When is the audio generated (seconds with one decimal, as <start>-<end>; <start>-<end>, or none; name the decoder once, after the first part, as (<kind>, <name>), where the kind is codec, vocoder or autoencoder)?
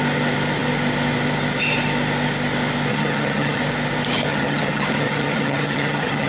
2.9-3.6 (vocoder, HiFi-GAN); 4.3-6.3